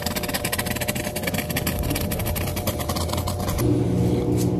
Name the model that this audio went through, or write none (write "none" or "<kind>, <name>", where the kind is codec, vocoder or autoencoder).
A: none